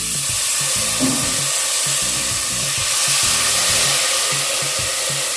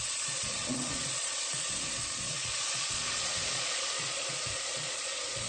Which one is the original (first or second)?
first